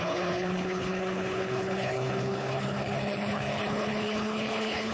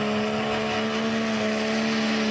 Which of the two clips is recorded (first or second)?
second